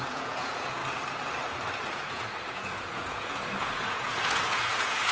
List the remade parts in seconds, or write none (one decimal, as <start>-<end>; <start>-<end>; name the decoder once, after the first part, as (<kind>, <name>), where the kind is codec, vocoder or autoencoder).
0.0-0.8 (vocoder, Vocos); 1.8-5.1